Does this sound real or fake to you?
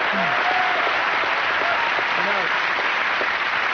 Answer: real